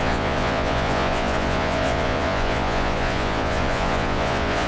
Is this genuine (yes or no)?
no